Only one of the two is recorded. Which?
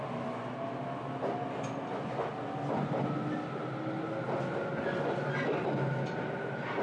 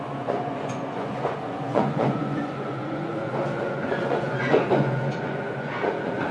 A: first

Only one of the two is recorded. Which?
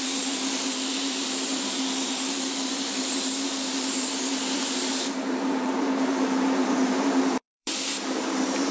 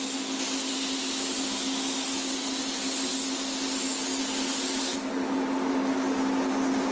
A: second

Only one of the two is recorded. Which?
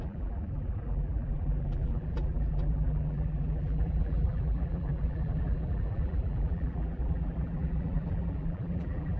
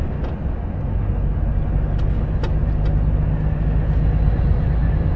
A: second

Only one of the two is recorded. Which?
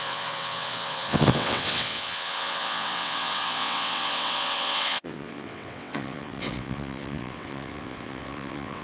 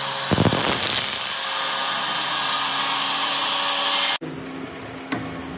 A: second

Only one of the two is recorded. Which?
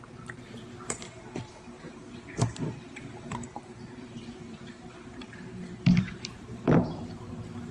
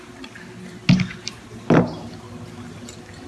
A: second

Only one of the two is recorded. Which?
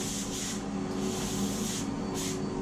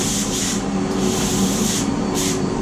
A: first